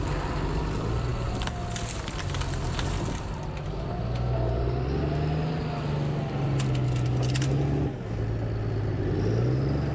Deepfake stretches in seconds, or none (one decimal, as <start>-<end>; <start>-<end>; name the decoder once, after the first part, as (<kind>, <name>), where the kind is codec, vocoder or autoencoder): none